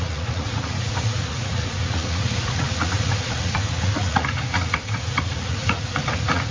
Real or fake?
fake